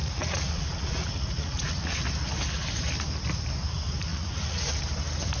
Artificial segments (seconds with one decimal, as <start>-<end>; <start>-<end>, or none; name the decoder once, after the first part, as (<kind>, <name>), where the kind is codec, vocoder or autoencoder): 0.0-2.0 (vocoder, Vocos); 4.1-4.7